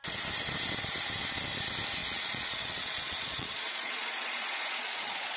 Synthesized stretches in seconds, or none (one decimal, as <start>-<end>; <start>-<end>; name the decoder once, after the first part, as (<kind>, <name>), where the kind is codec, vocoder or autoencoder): 2.0-5.4 (vocoder, Vocos)